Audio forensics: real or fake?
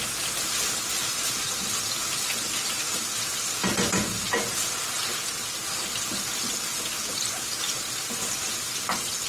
real